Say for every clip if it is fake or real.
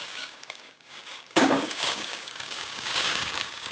fake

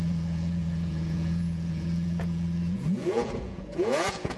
fake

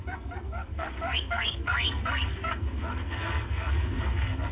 fake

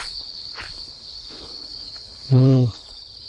fake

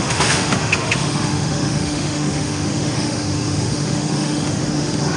fake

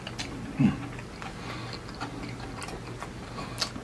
real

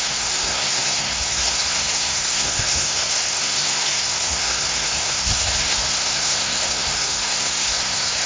fake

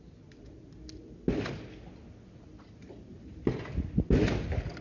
real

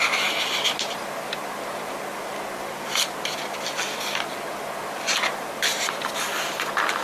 real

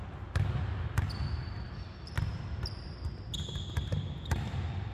real